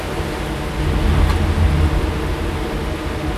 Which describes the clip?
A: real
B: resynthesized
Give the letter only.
A